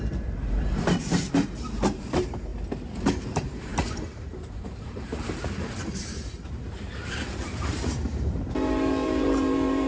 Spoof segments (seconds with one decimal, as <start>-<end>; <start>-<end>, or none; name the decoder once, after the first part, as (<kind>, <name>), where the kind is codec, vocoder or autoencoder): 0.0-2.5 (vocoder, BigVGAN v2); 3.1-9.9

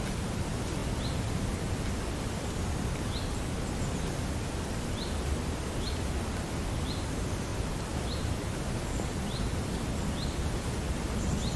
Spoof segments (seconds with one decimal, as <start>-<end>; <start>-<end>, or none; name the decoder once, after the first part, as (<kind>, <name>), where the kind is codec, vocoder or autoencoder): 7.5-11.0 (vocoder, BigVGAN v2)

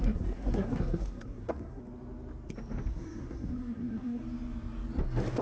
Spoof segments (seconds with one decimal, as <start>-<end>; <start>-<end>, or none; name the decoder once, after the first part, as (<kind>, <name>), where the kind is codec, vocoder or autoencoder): 0.0-1.8 (codec, SNAC); 2.9-4.2